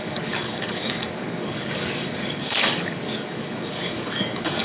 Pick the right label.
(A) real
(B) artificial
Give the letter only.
B